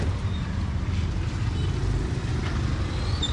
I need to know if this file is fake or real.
real